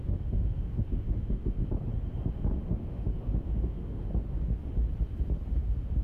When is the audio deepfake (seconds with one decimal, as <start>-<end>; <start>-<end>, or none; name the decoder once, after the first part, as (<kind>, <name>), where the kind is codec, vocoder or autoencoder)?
0.0-1.6 (autoencoder, DAC-VAE); 2.7-4.1; 5.5-6.0